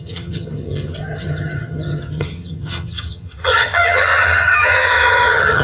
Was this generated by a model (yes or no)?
yes